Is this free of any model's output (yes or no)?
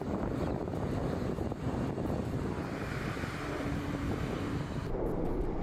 no